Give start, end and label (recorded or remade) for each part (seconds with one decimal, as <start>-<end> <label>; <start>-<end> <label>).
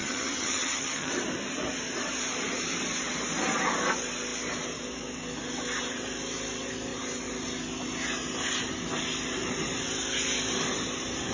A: 0.0-1.1 remade; 1.1-11.3 recorded